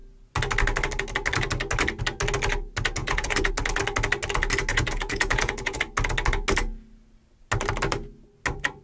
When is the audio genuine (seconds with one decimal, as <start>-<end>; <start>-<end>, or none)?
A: 0.0-3.0; 3.5-4.7; 5.8-8.8